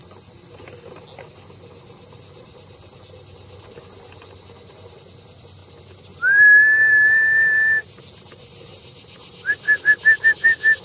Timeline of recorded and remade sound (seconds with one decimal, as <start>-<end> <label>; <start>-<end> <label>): 0.0-10.8 recorded